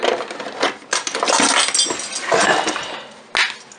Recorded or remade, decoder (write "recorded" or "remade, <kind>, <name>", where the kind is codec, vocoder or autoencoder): recorded